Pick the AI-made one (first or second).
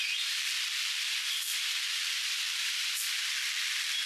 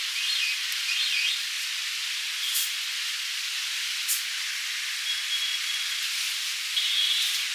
first